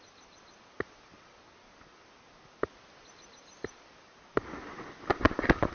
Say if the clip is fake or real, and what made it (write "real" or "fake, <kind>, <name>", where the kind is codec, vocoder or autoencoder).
real